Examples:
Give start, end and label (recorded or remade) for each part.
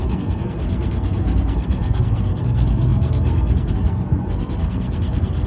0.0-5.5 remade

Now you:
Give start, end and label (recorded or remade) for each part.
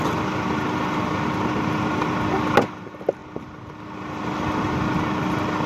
0.0-5.7 recorded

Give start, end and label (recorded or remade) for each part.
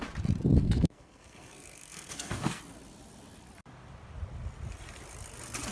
0.0-0.6 recorded; 0.6-2.6 remade; 2.6-5.7 recorded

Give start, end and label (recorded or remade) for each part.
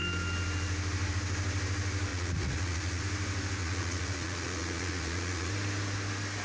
0.0-2.1 recorded; 2.1-3.0 remade; 3.0-3.6 recorded; 3.6-5.5 remade; 5.5-6.4 recorded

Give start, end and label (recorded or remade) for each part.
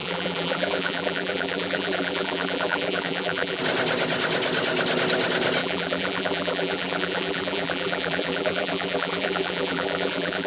0.0-3.6 remade; 3.6-5.6 recorded; 5.6-10.5 remade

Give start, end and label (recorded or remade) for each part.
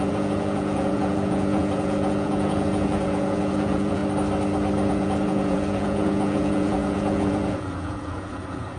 0.0-4.0 remade; 4.0-4.9 recorded; 4.9-8.8 remade